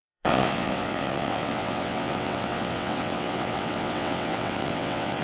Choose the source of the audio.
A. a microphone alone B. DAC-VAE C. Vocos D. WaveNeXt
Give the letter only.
D